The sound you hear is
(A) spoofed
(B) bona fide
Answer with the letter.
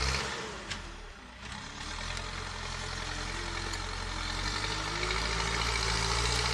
B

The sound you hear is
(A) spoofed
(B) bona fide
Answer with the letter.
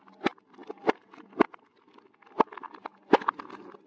B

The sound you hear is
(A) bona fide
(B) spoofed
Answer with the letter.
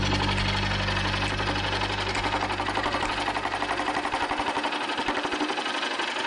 A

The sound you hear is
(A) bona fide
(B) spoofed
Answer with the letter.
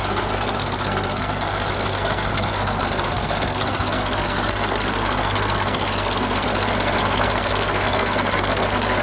B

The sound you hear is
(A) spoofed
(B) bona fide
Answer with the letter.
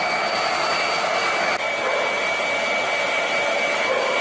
B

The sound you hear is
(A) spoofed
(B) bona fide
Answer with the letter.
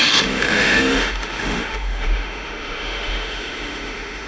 A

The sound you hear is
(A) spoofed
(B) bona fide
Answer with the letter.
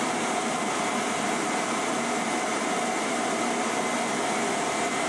A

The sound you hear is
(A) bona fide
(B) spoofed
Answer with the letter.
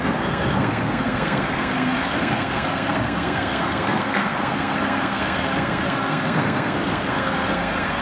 B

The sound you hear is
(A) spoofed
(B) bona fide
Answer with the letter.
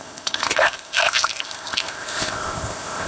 A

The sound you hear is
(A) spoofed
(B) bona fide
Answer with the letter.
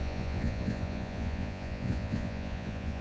A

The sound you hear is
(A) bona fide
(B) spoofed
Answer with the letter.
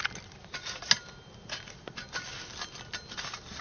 A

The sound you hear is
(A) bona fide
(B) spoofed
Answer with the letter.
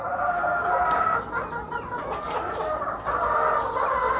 A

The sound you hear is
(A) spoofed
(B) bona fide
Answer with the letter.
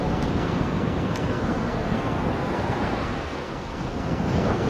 A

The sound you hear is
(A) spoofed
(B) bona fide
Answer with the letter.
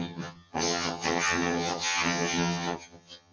A